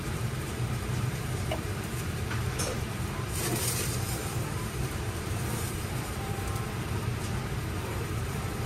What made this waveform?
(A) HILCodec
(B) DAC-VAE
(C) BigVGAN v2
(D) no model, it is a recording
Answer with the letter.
C